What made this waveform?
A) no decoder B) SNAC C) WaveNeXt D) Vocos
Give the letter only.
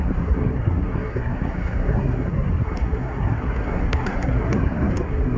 B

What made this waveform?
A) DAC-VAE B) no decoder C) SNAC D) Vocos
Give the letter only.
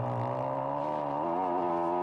B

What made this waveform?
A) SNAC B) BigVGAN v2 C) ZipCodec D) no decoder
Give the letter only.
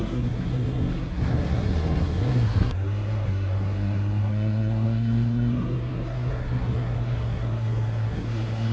A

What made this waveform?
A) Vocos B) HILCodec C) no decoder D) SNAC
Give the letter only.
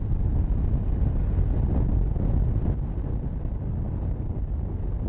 C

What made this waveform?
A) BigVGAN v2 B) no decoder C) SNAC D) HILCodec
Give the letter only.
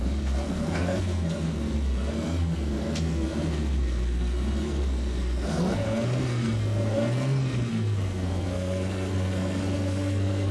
C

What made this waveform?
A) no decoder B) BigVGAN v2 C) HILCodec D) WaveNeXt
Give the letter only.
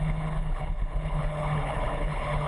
C